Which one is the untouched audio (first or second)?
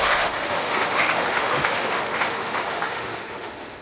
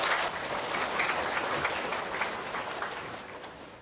second